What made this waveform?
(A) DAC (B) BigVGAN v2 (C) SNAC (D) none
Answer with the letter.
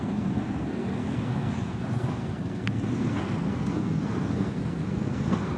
C